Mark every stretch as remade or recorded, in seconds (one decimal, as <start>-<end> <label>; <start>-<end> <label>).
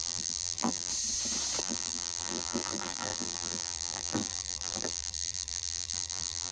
0.0-0.9 remade; 0.9-1.6 recorded; 1.6-6.5 remade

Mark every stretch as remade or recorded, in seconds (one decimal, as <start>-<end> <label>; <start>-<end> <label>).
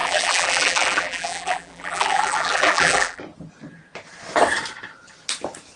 0.0-3.2 remade; 3.2-5.8 recorded